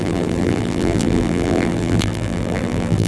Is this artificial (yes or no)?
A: yes